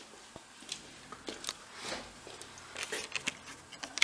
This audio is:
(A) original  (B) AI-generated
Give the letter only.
A